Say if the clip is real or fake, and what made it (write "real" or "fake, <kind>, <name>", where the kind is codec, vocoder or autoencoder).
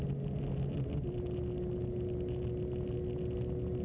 real